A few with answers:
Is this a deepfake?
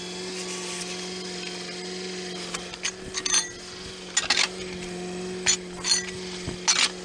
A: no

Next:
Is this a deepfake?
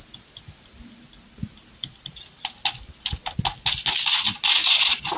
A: no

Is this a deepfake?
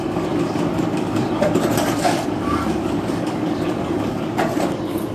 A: yes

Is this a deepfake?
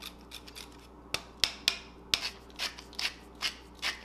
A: no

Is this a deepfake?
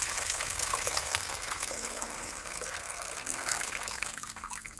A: yes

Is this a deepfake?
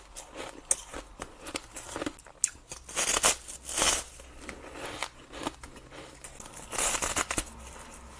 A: no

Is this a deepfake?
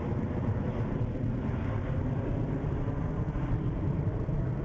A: yes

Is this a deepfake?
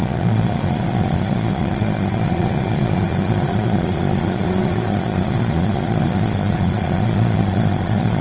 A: yes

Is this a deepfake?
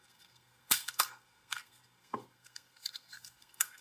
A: yes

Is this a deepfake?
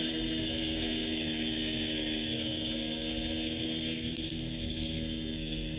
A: yes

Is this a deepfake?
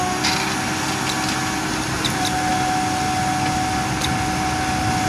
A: no